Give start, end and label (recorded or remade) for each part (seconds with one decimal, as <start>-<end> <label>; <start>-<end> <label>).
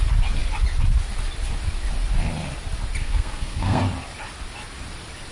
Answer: 0.0-3.0 recorded; 3.0-3.8 remade; 3.8-5.3 recorded